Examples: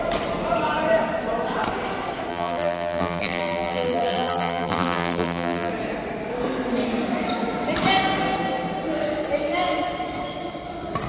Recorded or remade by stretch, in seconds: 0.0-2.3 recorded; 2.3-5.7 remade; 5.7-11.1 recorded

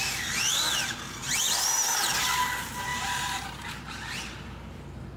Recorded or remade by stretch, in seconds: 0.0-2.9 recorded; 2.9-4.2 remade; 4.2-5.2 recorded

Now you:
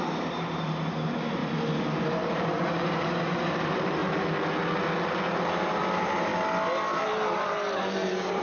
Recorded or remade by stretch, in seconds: 0.0-1.4 remade; 1.4-2.1 recorded; 2.1-4.0 remade; 4.0-5.3 recorded; 5.3-6.3 remade; 6.3-7.0 recorded; 7.0-8.4 remade

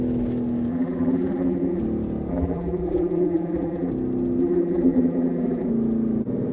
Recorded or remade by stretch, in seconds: 0.0-0.7 recorded; 0.7-1.8 remade; 1.8-2.3 recorded; 2.3-3.9 remade; 3.9-4.4 recorded; 4.4-5.7 remade; 5.7-6.5 recorded

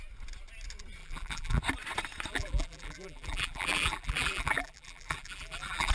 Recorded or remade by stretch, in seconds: 0.0-1.0 recorded; 1.0-1.6 remade; 1.6-2.3 recorded; 2.3-5.9 remade